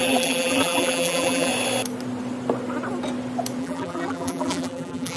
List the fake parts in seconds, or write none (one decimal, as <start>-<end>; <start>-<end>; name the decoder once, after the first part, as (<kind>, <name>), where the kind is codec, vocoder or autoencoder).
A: 0.0-1.5 (vocoder, BigVGAN v2); 3.6-5.2